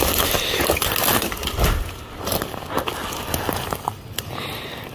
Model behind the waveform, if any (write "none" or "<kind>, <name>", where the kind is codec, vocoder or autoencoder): none